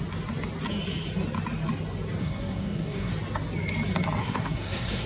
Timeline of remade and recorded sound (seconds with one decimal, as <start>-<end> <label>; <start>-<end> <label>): 0.0-2.2 recorded; 2.2-3.1 remade; 3.1-4.2 recorded; 4.2-5.1 remade